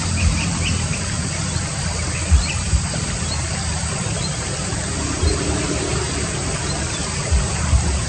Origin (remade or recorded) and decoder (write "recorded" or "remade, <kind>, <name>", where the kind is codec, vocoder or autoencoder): remade, vocoder, BigVGAN v2